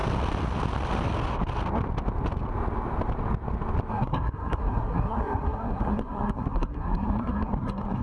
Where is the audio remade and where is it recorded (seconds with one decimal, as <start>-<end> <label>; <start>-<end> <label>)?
0.0-3.9 recorded; 3.9-8.0 remade